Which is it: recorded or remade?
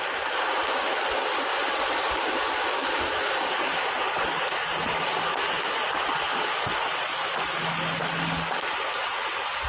recorded